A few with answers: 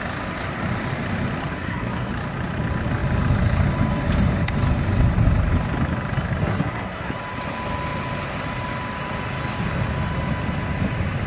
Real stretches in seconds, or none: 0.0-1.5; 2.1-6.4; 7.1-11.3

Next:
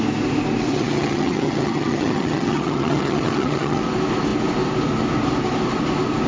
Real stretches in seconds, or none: 0.0-0.7; 3.8-6.3

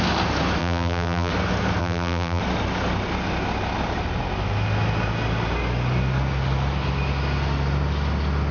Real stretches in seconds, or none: 0.0-0.6; 1.3-1.8; 2.4-8.5

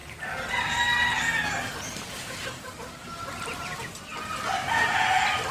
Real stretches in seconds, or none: 0.0-5.5

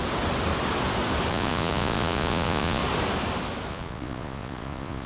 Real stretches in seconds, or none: 0.0-1.3; 2.8-3.7